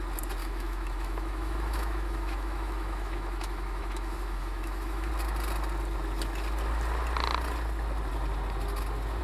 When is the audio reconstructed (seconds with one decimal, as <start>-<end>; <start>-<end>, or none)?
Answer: 0.4-5.1